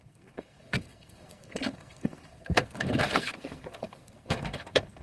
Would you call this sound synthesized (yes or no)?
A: yes